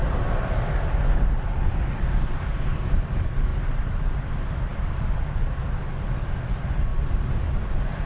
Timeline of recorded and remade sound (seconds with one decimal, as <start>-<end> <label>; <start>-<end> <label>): 0.0-0.7 remade; 0.7-3.5 recorded; 3.5-4.3 remade; 4.3-4.7 recorded; 4.7-5.2 remade; 5.2-6.9 recorded; 6.9-7.5 remade; 7.5-8.1 recorded